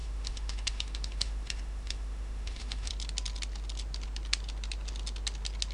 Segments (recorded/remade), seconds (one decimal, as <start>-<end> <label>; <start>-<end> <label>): 0.0-2.9 remade; 2.9-5.7 recorded